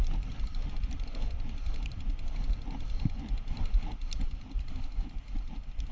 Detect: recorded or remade recorded